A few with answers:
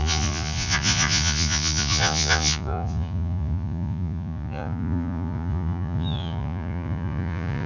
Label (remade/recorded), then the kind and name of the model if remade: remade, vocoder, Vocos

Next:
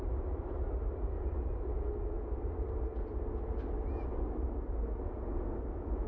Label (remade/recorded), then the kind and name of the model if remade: recorded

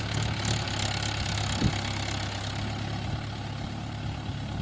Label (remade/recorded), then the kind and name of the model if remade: recorded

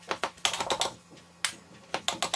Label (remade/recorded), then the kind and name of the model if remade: recorded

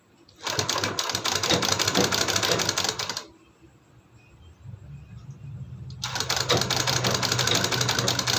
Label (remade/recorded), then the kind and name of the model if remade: recorded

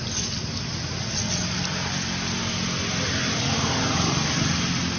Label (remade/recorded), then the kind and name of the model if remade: recorded